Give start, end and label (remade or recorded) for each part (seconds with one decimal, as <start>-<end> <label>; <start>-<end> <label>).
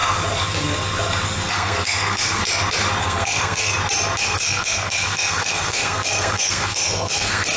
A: 0.0-1.5 recorded; 1.5-2.4 remade; 2.4-3.0 recorded; 3.0-3.7 remade; 3.7-4.2 recorded; 4.2-7.6 remade